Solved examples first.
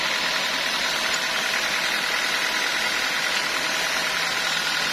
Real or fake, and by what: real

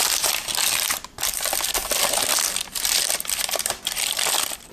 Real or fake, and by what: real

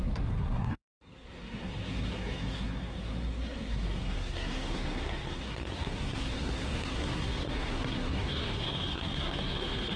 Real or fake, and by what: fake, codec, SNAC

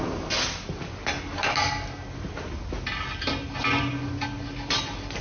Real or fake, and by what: real